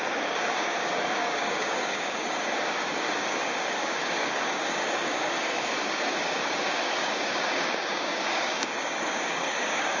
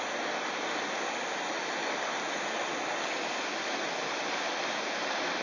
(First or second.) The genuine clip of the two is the second